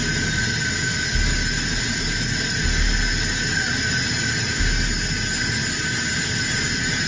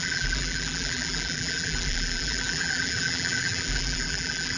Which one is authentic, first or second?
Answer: first